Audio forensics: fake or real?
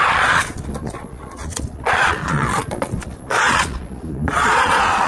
fake